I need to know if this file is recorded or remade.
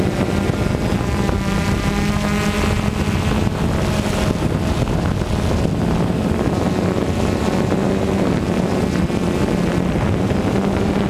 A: recorded